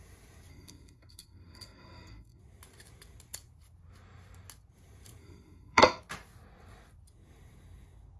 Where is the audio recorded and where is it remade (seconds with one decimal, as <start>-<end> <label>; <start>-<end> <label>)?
0.0-0.5 recorded; 0.5-2.4 remade; 2.4-5.2 recorded; 5.2-6.0 remade; 6.0-8.2 recorded